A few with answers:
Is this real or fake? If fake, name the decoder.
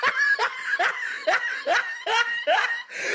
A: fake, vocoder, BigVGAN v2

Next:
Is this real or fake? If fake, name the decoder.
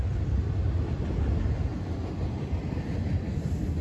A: real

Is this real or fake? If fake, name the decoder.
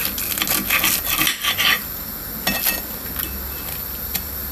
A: real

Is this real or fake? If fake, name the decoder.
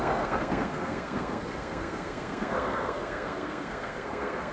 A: fake, codec, SNAC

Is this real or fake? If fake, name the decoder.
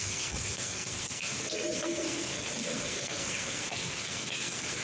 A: fake, codec, SNAC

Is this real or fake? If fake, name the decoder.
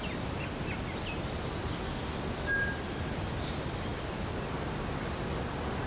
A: real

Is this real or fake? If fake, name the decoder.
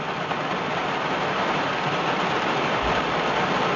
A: real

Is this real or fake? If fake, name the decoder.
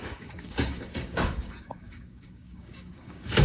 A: fake, codec, DAC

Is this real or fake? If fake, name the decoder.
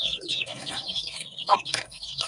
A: fake, codec, SNAC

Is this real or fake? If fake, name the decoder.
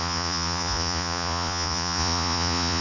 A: fake, vocoder, Vocos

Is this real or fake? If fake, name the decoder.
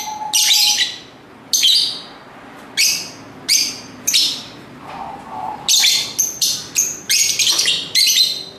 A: real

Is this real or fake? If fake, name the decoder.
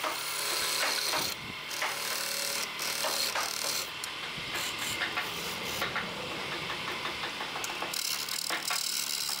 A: real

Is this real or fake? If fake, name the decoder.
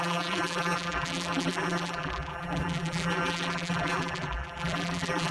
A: fake, vocoder, BigVGAN v2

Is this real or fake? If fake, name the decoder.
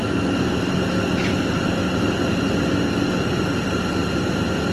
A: real